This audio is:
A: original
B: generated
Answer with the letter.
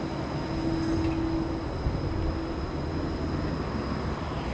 A